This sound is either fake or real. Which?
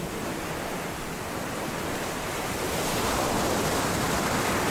fake